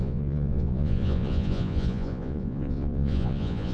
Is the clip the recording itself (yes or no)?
no